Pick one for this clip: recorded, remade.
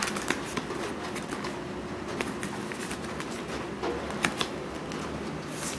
recorded